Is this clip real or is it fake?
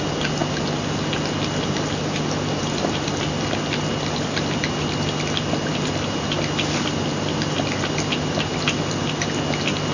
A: real